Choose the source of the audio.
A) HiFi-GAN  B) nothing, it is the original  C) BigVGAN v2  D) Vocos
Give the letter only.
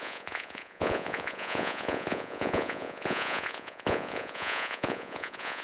D